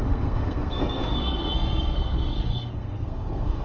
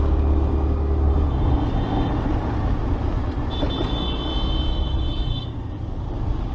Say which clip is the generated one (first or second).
first